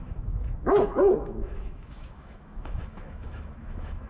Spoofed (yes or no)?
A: yes